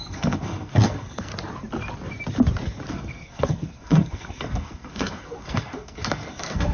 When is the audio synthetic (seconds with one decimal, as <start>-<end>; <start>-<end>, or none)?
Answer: 0.0-1.3; 2.9-6.7